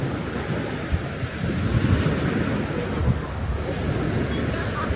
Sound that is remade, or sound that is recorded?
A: recorded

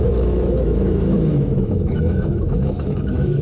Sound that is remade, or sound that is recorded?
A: remade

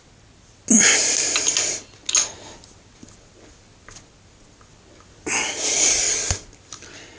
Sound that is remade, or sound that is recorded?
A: recorded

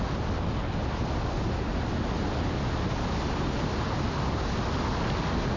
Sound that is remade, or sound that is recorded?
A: recorded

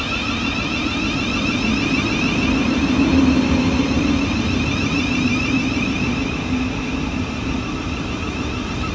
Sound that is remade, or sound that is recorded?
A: recorded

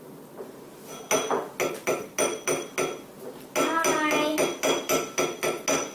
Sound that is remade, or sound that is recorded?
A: recorded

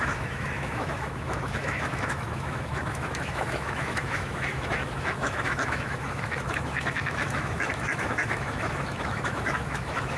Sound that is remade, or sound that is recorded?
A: remade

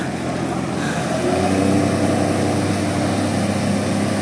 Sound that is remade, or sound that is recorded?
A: recorded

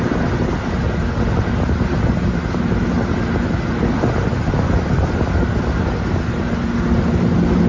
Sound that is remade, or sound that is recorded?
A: recorded